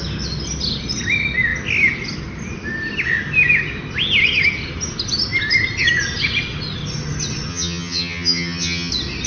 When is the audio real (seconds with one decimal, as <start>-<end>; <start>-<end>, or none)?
0.0-7.5; 8.9-9.3